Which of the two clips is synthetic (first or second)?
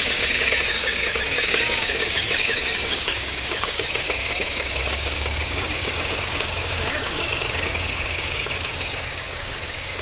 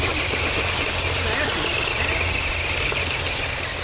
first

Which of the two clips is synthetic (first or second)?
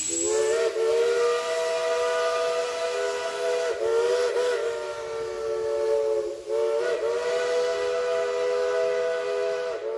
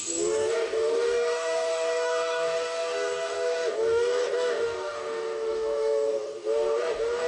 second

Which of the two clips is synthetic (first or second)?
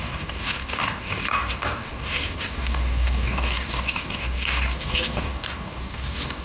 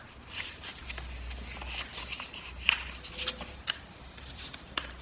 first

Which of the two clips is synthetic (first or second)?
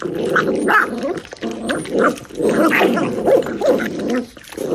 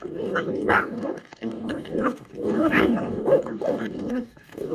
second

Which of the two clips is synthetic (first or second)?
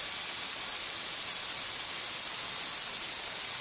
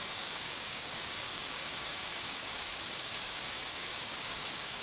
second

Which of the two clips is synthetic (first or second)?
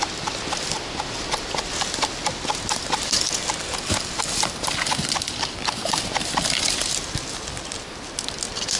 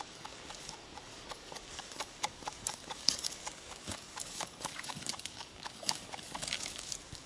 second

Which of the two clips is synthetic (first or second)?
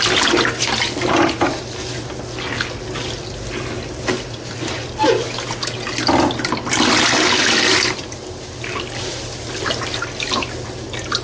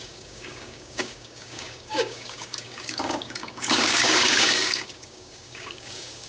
second